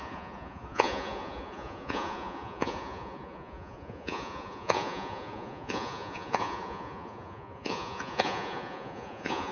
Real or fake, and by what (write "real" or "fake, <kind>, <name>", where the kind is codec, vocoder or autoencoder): fake, vocoder, Vocos